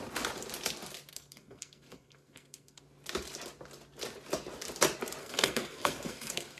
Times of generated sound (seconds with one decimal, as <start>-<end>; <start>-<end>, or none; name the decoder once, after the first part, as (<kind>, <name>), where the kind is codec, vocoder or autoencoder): 1.1-2.8 (codec, SNAC); 5.2-6.6